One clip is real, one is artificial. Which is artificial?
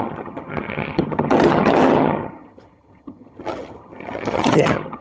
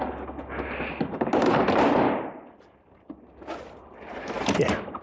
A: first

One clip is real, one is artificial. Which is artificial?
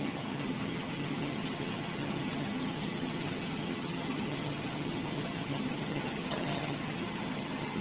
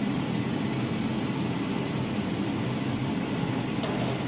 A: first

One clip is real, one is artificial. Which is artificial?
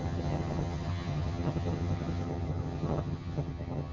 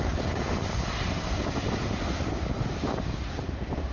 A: first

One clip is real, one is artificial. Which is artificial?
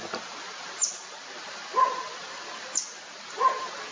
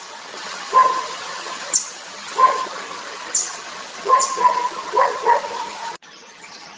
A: second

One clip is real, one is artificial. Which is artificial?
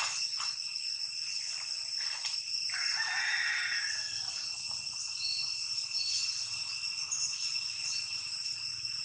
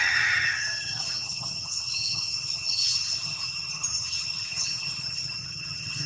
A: second